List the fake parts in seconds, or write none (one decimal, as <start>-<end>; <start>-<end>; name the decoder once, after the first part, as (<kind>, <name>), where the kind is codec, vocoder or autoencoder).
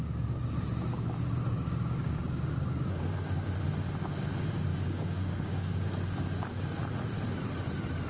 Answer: 0.9-3.0 (codec, DAC); 4.7-5.9